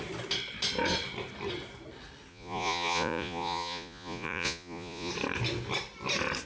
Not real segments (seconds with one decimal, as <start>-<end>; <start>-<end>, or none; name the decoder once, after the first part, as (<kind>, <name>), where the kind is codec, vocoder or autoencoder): 2.3-5.1 (vocoder, Vocos)